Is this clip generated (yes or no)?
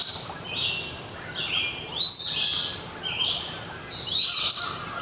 no